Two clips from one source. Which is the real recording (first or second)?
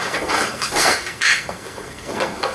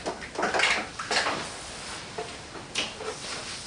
second